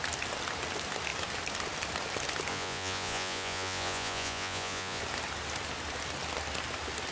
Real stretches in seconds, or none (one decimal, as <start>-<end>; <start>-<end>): 0.0-2.5; 5.0-7.1